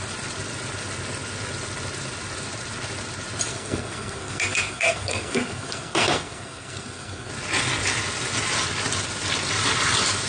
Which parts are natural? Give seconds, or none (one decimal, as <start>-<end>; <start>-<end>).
0.0-3.5; 7.3-10.3